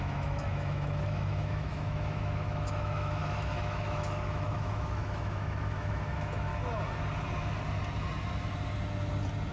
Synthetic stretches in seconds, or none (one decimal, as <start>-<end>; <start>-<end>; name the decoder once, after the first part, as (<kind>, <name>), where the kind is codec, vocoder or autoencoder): 0.0-6.5 (autoencoder, DAC-VAE)